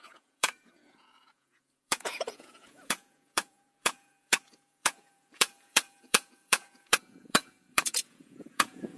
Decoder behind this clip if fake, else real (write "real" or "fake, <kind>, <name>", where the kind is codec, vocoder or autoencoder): fake, vocoder, Vocos